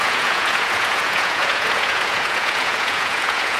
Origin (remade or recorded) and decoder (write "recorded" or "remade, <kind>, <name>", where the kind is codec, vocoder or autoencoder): remade, vocoder, Vocos